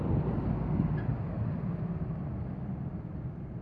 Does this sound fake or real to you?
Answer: real